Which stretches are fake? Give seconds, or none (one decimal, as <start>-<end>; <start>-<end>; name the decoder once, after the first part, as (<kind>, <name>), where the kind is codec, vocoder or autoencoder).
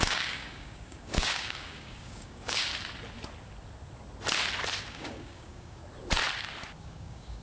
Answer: 0.0-2.7 (codec, DAC); 4.9-5.8; 6.8-7.4